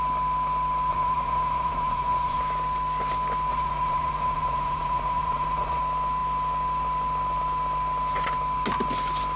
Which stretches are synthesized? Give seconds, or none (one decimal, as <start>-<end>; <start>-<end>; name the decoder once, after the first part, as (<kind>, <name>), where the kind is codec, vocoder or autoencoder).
0.9-2.4 (vocoder, Vocos); 3.5-5.8